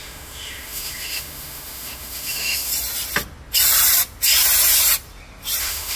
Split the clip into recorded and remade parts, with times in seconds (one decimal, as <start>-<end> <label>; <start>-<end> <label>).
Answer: 0.0-2.7 remade; 2.7-5.6 recorded; 5.6-6.0 remade